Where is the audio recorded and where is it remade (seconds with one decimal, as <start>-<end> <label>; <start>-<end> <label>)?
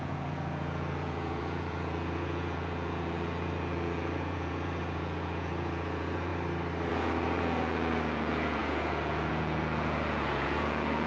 0.0-6.3 remade; 6.3-6.9 recorded; 6.9-11.1 remade